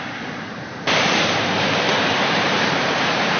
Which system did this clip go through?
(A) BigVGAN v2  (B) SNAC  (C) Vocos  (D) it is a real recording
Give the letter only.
A